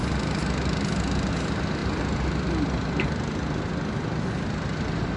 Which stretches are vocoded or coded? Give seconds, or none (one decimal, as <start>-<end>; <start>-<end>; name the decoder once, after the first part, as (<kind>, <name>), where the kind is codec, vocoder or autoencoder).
none